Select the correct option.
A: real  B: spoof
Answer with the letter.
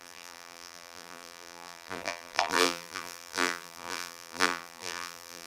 B